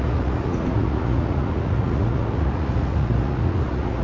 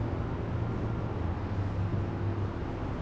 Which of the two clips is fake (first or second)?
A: first